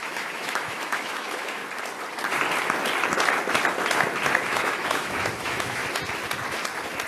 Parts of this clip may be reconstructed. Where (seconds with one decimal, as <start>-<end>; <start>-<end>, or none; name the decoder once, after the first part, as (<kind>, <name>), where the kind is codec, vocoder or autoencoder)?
0.0-1.6 (autoencoder, DAC-VAE); 4.5-5.8